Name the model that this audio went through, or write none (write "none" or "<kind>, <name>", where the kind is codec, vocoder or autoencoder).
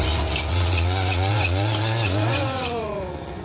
vocoder, Vocos